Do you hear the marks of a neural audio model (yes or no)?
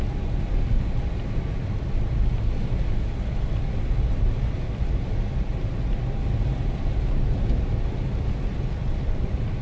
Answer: no